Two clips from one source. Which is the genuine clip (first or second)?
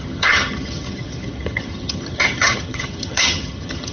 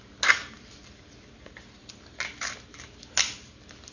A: second